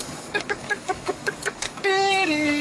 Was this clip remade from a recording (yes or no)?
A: yes